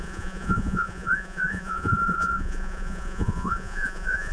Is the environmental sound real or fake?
fake